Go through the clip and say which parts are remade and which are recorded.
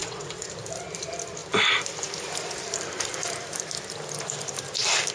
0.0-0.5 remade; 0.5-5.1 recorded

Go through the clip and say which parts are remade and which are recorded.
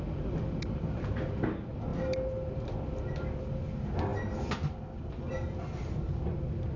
0.0-6.8 recorded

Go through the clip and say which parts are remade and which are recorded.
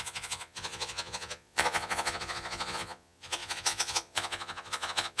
0.0-5.2 remade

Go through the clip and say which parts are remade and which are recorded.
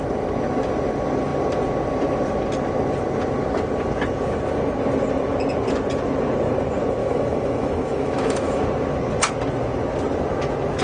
0.0-7.0 recorded; 7.0-8.6 remade; 8.6-10.8 recorded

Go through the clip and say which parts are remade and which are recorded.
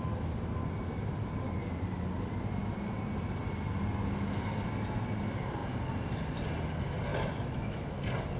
0.0-7.1 recorded; 7.1-8.0 remade; 8.0-8.4 recorded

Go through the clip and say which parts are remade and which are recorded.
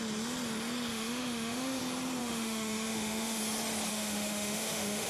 0.0-0.9 recorded; 0.9-1.8 remade; 1.8-2.2 recorded; 2.2-3.4 remade; 3.4-3.9 recorded; 3.9-5.1 remade